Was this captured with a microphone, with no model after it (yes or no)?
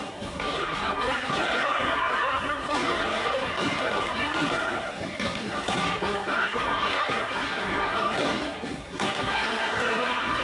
no